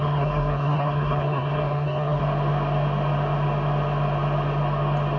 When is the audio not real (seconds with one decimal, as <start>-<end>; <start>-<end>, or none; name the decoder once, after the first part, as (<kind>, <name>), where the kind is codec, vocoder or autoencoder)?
0.0-2.2 (codec, SNAC)